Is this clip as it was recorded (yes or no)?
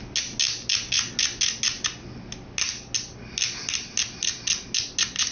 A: yes